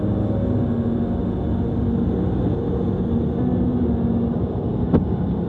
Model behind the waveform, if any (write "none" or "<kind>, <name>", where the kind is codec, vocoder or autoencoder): none